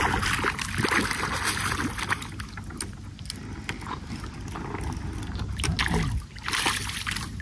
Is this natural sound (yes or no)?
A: yes